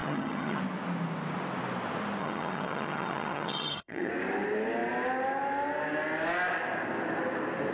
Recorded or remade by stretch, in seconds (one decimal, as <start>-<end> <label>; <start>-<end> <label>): 0.0-0.6 remade; 0.6-2.2 recorded; 2.2-4.1 remade; 4.1-7.7 recorded